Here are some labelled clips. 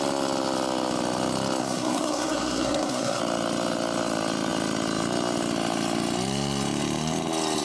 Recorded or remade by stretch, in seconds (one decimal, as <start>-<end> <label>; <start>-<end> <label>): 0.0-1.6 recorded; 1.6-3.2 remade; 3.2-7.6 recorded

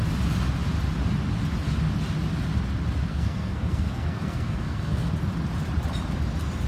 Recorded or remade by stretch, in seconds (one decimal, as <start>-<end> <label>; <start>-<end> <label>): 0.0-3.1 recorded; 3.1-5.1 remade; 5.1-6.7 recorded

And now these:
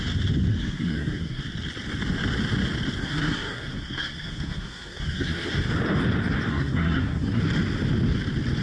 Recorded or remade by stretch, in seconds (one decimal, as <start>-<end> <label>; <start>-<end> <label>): 0.0-0.5 recorded; 0.5-1.4 remade; 1.4-3.0 recorded; 3.0-5.5 remade; 5.5-6.5 recorded; 6.5-7.4 remade; 7.4-8.6 recorded

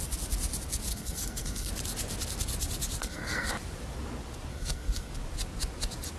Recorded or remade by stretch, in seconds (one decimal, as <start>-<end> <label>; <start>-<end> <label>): 0.0-0.9 recorded; 0.9-1.7 remade; 1.7-3.0 recorded; 3.0-3.5 remade; 3.5-4.5 recorded; 4.5-5.1 remade; 5.1-6.2 recorded